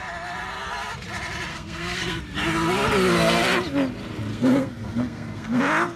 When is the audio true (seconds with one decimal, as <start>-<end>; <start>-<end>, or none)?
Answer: 0.0-1.5; 2.2-4.3; 5.6-6.0